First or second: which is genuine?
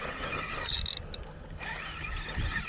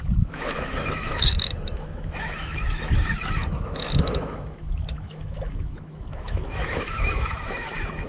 first